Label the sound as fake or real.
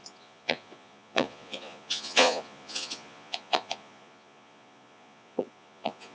fake